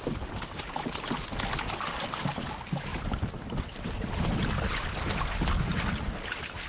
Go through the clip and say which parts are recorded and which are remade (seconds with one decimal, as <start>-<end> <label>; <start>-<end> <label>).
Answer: 0.0-2.9 recorded; 2.9-4.5 remade; 4.5-5.7 recorded; 5.7-6.7 remade